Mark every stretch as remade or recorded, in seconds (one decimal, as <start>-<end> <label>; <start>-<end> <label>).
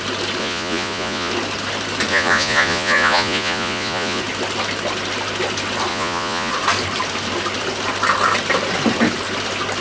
0.0-0.4 recorded; 0.4-1.3 remade; 1.3-2.1 recorded; 2.1-4.2 remade; 4.2-5.9 recorded; 5.9-6.5 remade; 6.5-9.8 recorded